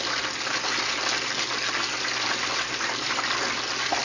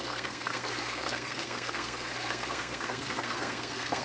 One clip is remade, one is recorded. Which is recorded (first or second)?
first